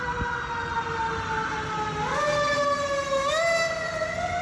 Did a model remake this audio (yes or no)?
no